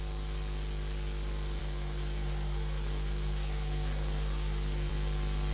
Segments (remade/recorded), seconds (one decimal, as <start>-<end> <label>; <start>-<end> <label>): 0.0-1.6 recorded; 1.6-4.9 remade; 4.9-5.5 recorded